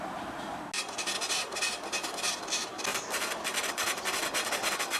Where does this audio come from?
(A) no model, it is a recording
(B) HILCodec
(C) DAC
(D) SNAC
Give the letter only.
A